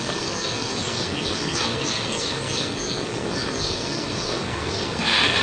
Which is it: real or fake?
fake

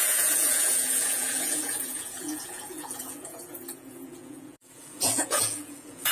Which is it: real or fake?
fake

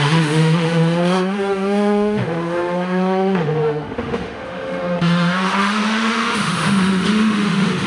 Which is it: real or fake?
fake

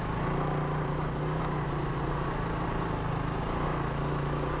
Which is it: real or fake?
real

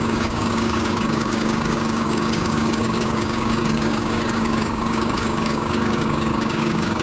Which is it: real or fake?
fake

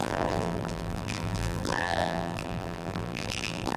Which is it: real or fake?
fake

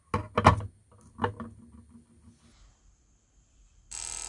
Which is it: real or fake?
real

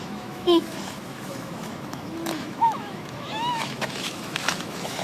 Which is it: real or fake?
fake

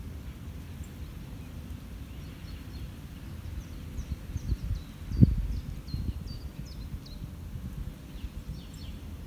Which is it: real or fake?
real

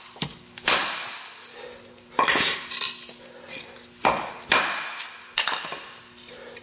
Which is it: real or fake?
real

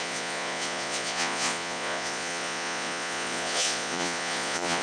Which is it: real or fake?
fake